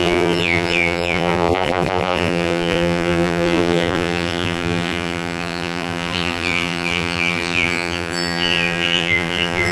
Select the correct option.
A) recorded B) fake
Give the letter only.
B